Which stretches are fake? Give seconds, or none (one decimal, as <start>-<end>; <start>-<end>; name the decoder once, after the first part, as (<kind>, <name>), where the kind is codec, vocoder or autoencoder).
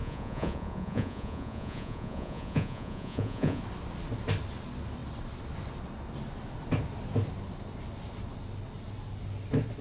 0.0-3.6 (vocoder, Vocos)